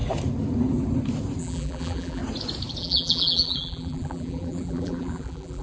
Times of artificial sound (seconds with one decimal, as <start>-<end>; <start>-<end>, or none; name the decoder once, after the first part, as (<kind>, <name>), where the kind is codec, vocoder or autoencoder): 1.4-2.2 (vocoder, BigVGAN v2); 2.8-5.6